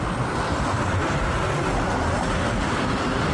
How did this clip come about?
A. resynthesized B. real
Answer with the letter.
B